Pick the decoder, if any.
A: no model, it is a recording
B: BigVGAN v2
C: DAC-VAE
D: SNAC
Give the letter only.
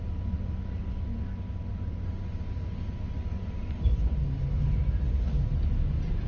A